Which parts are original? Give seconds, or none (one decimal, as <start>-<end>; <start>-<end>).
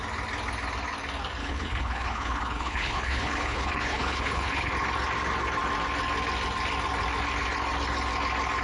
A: 0.0-1.4; 4.7-8.6